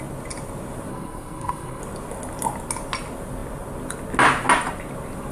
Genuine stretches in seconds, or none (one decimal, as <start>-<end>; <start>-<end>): 0.0-0.9; 1.8-5.3